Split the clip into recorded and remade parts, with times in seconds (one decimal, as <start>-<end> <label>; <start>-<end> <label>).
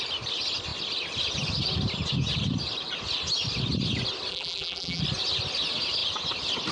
0.0-4.3 recorded; 4.3-5.0 remade; 5.0-6.7 recorded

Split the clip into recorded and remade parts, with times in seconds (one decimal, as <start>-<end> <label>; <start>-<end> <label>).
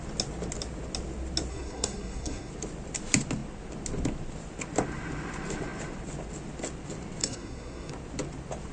0.0-1.5 recorded; 1.5-2.5 remade; 2.5-7.2 recorded; 7.2-7.9 remade; 7.9-8.7 recorded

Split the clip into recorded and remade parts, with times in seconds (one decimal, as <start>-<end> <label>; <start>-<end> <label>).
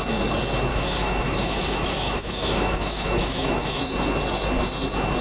0.0-0.7 recorded; 0.7-3.8 remade; 3.8-5.2 recorded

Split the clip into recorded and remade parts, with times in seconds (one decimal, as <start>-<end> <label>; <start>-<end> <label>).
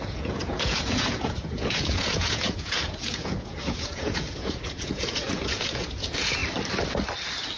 0.0-6.4 remade; 6.4-7.6 recorded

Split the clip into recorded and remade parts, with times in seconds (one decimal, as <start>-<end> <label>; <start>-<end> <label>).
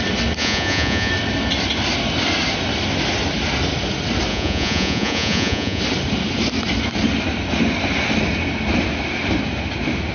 0.0-0.4 recorded; 0.4-1.1 remade; 1.1-4.3 recorded; 4.3-5.8 remade; 5.8-10.1 recorded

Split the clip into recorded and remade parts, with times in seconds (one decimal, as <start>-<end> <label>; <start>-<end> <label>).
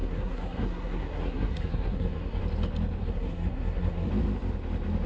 0.0-2.4 remade; 2.4-3.0 recorded; 3.0-4.1 remade; 4.1-5.1 recorded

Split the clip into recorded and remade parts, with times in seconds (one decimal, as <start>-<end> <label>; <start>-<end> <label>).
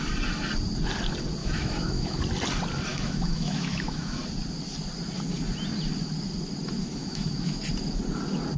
0.0-1.4 recorded; 1.4-2.2 remade; 2.2-2.9 recorded; 2.9-4.2 remade; 4.2-6.8 recorded; 6.8-7.6 remade; 7.6-8.6 recorded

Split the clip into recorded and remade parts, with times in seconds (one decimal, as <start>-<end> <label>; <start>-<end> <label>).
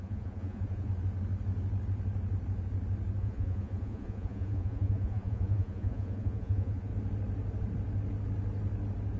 0.0-0.9 remade; 0.9-3.2 recorded; 3.2-6.9 remade; 6.9-9.2 recorded